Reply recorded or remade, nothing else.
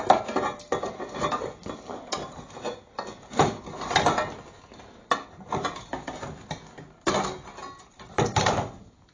recorded